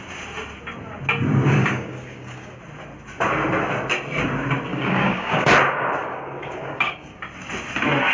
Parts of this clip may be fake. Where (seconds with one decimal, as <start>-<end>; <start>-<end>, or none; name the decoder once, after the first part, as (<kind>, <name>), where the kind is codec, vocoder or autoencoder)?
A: 1.6-2.6 (codec, DAC); 4.7-5.5; 6.0-7.2